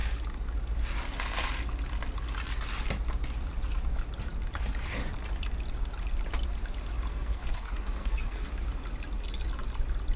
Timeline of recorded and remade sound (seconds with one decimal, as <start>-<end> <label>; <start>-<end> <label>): 0.0-7.1 recorded; 7.1-8.5 remade; 8.5-10.2 recorded